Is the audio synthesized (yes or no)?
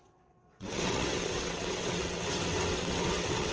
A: yes